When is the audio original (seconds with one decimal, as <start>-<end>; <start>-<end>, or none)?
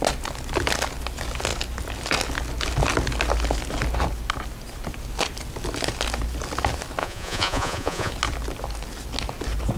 0.0-7.0; 8.1-9.8